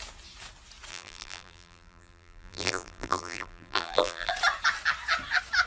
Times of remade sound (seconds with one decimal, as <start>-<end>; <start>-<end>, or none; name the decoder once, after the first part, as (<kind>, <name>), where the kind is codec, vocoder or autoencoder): 0.9-4.3 (vocoder, BigVGAN v2)